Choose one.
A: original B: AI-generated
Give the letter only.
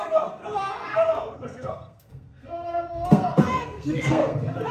B